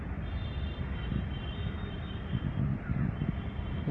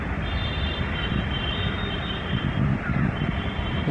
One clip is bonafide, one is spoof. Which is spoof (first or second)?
second